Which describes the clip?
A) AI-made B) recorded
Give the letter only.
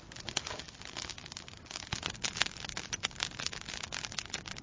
A